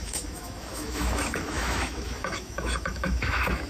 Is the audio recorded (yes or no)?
no